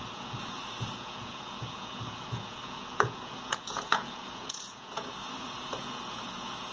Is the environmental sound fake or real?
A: fake